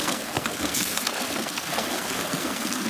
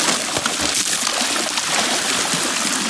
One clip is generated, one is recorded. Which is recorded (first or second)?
second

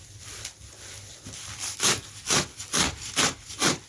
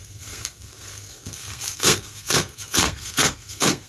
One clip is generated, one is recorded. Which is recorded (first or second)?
first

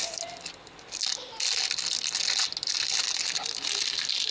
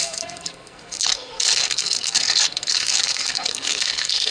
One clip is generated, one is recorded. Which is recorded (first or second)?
first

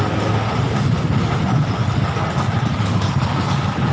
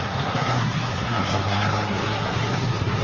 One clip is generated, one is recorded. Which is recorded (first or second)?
first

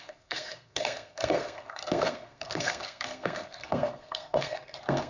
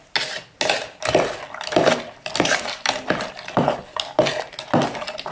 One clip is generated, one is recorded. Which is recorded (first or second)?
second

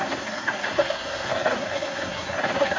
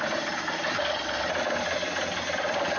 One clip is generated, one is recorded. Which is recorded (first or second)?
second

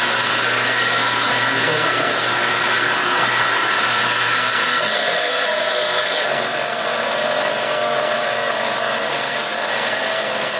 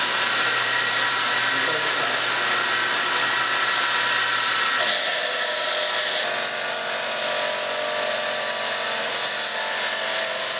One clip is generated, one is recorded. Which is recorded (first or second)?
second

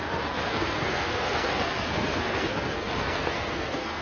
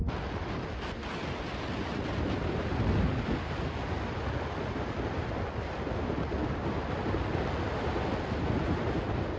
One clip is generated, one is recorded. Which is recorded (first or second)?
second